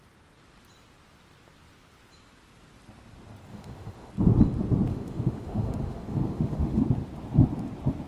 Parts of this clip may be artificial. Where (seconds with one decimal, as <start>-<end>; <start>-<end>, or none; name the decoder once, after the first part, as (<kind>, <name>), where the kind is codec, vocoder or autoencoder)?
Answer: 3.5-4.1 (autoencoder, DAC-VAE); 4.9-6.8